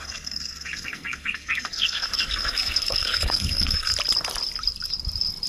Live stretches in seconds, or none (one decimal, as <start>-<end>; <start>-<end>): 3.9-5.5